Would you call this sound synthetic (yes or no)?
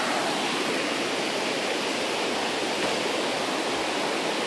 no